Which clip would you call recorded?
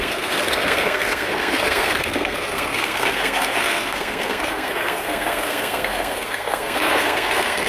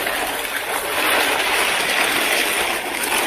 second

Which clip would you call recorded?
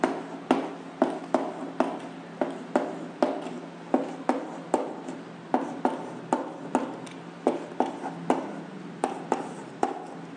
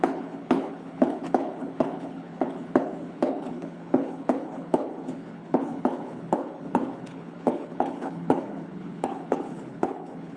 first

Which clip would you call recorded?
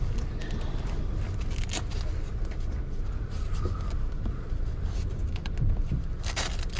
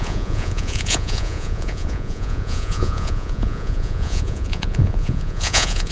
first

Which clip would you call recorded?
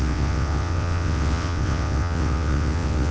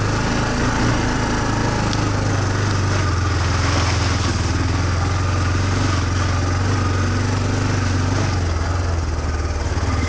second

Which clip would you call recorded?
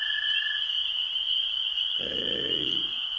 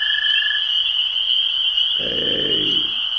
second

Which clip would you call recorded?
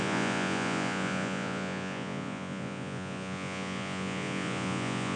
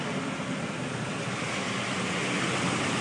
second